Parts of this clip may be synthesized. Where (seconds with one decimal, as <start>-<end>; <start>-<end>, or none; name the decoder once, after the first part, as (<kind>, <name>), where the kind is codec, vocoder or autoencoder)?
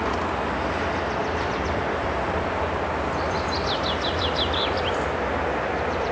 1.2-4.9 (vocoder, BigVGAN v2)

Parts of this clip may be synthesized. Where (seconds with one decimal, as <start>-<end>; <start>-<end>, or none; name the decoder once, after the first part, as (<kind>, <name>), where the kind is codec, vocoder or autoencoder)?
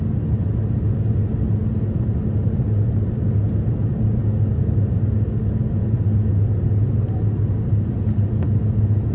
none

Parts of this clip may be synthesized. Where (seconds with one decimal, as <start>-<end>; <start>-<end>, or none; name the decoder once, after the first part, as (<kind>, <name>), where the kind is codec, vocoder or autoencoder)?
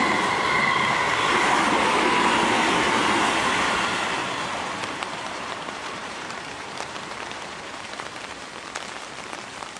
4.2-8.2 (vocoder, BigVGAN v2)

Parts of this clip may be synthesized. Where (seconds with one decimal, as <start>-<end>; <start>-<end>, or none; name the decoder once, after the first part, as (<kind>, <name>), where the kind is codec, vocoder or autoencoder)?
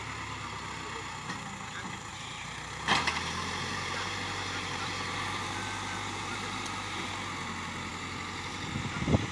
2.1-7.1 (vocoder, BigVGAN v2)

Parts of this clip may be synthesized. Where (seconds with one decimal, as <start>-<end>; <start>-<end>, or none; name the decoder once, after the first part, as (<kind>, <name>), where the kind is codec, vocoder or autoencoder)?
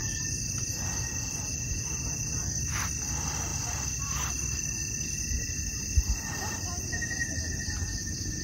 0.0-0.7 (vocoder, BigVGAN v2)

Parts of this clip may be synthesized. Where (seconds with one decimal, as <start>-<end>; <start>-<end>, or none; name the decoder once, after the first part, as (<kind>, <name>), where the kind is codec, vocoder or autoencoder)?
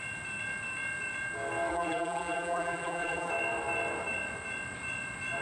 1.7-3.3 (vocoder, BigVGAN v2)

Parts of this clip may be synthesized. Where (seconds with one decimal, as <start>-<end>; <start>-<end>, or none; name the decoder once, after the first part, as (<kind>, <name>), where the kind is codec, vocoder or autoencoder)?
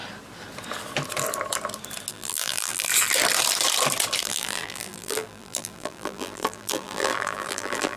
2.1-2.9 (vocoder, BigVGAN v2); 4.2-8.0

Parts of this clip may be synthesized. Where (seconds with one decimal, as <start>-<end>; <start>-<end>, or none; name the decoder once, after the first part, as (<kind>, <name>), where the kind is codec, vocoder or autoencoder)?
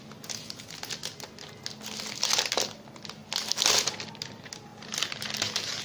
none